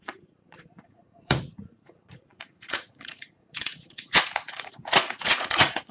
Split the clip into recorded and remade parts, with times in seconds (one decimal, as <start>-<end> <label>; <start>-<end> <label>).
0.0-5.9 remade